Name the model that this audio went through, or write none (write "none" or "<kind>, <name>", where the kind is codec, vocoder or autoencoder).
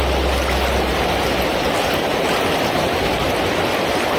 none